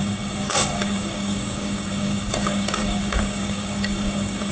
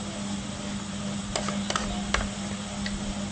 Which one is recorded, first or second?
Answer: second